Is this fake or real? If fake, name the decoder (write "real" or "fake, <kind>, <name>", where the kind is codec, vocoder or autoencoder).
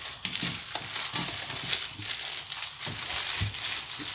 real